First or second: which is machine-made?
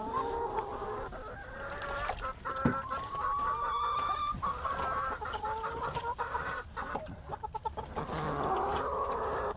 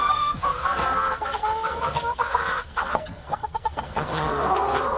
second